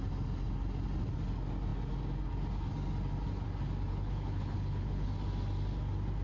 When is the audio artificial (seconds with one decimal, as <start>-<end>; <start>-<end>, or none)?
3.9-5.1